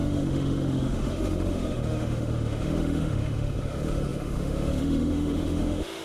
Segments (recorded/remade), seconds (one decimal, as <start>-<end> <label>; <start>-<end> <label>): 0.0-6.0 remade